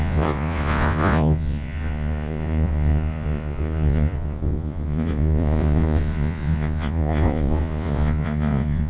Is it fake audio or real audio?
fake